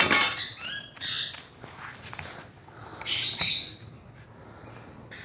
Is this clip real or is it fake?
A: real